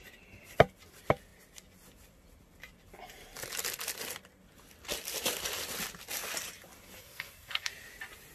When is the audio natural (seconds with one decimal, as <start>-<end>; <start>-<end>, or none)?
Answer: 0.0-7.0; 7.7-8.3